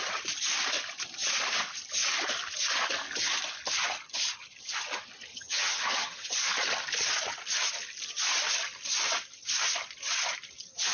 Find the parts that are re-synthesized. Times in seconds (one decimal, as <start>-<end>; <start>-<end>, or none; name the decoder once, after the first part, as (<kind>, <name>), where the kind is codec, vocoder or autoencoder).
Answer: 5.3-6.3 (vocoder, HiFi-GAN)